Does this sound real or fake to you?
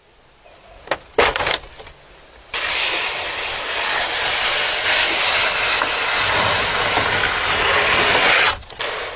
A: real